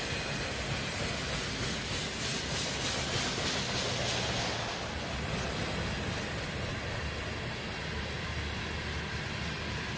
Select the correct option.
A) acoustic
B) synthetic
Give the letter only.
A